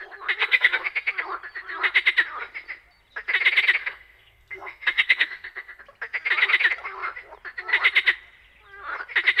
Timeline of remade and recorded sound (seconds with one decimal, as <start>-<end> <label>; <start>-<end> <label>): 0.0-0.4 recorded; 0.4-0.9 remade; 0.9-3.8 recorded; 3.8-5.8 remade; 5.8-9.4 recorded